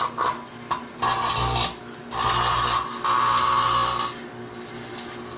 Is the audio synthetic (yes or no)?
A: no